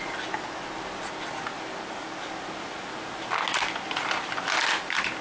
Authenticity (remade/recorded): recorded